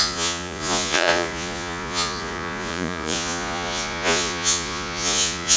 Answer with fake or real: fake